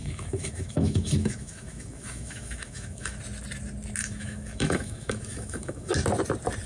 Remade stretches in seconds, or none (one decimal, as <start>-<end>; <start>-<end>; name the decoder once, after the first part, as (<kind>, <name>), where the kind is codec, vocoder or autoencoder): 0.0-3.2 (autoencoder, DAC-VAE); 4.0-5.9